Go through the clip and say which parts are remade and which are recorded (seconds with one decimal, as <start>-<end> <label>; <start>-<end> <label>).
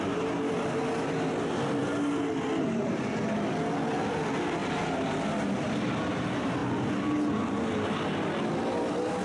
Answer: 0.0-9.2 recorded